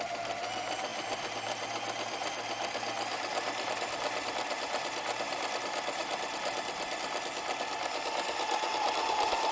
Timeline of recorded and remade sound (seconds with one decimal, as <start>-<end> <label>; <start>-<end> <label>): 0.0-9.5 recorded